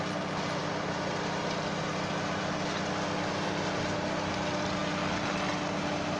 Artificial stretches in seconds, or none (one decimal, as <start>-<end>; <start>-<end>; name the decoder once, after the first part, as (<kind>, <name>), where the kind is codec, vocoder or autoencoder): none